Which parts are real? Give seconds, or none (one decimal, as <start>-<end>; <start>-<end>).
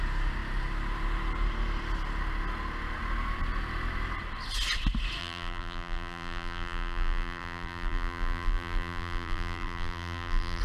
0.0-5.2